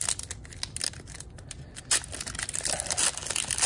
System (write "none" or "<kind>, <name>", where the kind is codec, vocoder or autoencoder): none